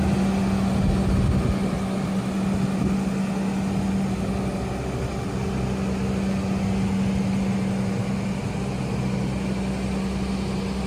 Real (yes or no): yes